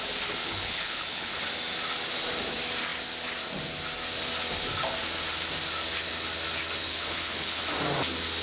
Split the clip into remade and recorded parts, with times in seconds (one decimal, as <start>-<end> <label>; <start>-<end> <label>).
0.0-0.4 recorded; 0.4-1.4 remade; 1.4-6.9 recorded; 6.9-7.6 remade; 7.6-8.4 recorded